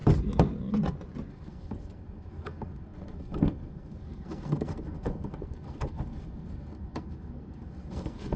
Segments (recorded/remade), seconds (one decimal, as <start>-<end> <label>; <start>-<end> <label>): 0.0-1.3 recorded; 1.3-8.4 remade